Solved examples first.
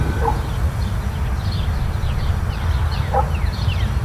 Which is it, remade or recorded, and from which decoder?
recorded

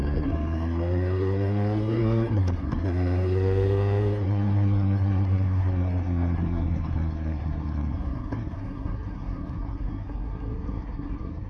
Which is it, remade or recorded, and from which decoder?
remade, codec, SNAC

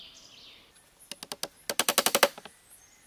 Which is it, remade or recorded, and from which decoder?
recorded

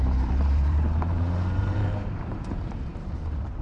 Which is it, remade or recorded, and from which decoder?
remade, vocoder, BigVGAN v2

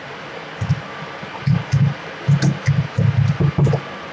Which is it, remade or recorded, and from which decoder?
recorded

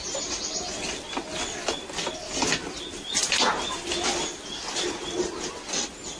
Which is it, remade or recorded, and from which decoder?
recorded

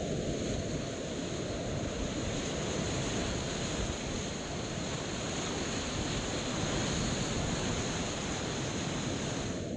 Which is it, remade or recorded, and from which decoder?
recorded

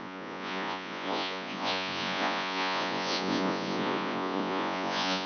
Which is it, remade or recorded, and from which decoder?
remade, vocoder, Vocos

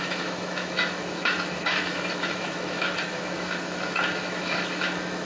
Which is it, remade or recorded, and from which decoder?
remade, autoencoder, DAC-VAE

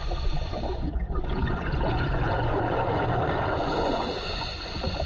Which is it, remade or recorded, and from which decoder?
remade, vocoder, Vocos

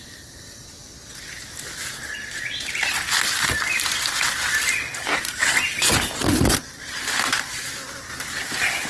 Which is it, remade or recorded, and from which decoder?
recorded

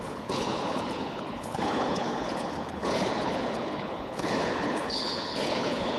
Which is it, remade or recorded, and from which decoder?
remade, codec, HILCodec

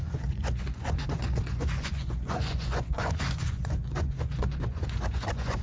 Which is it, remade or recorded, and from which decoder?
remade, vocoder, Vocos